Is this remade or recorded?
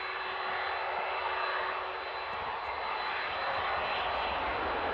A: recorded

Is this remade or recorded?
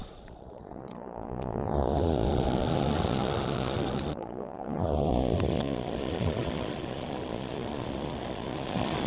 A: remade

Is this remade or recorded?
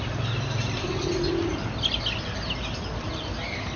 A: recorded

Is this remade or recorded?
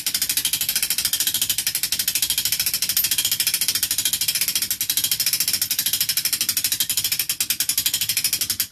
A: recorded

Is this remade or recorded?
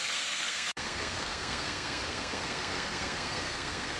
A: remade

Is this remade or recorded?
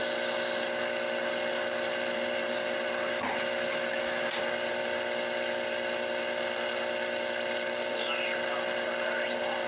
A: recorded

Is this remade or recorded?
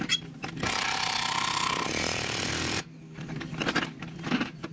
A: recorded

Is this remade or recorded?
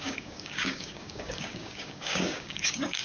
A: remade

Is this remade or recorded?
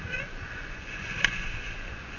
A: remade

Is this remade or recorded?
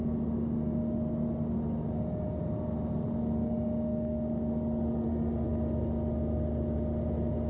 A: recorded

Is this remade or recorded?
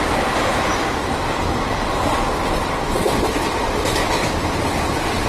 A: recorded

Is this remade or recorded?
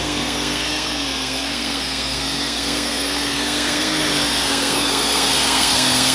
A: remade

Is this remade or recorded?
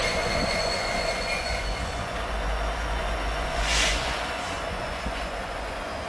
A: remade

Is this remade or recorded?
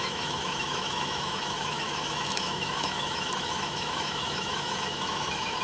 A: remade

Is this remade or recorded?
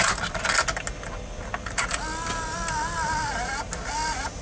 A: recorded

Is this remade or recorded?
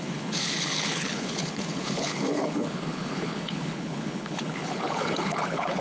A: remade